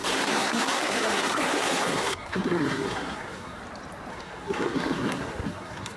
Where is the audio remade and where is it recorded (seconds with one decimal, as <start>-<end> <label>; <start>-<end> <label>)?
0.0-3.6 remade; 3.6-4.1 recorded; 4.1-6.0 remade